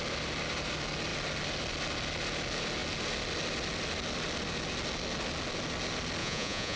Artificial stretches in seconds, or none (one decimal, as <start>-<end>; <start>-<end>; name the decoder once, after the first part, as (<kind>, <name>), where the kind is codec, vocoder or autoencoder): 6.2-6.8 (vocoder, Vocos)

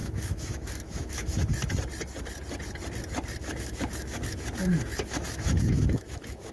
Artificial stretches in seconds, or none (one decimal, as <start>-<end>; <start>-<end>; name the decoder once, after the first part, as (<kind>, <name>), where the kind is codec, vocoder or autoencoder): 0.0-1.5 (autoencoder, DAC-VAE); 3.4-6.5

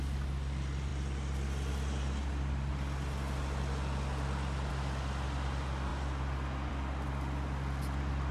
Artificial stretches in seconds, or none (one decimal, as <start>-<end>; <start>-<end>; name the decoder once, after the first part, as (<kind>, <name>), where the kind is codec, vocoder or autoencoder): none

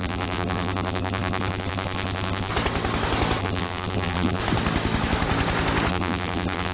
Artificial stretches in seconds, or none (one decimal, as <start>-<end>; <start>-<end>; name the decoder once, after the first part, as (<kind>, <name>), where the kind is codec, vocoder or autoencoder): 0.0-2.5 (vocoder, BigVGAN v2); 3.4-4.4; 5.9-6.7

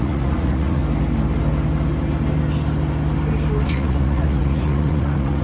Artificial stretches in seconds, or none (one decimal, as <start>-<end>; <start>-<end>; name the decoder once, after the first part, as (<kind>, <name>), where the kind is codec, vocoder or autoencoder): 0.0-0.8 (vocoder, Vocos); 3.6-5.4